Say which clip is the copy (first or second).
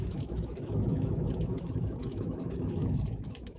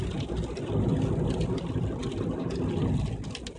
first